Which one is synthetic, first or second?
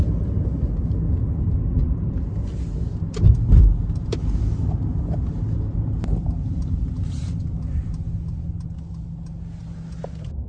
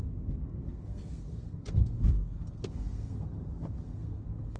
second